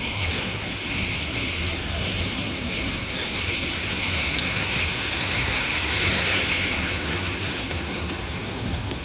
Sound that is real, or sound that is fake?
fake